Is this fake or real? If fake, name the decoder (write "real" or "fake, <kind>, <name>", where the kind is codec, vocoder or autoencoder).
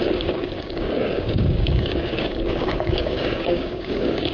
fake, codec, DAC